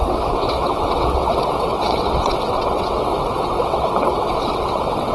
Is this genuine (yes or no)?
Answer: no